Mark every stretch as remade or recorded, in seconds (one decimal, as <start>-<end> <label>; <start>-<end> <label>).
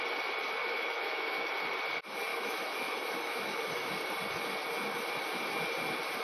0.0-0.6 recorded; 0.6-1.5 remade; 1.5-2.3 recorded; 2.3-3.9 remade; 3.9-6.2 recorded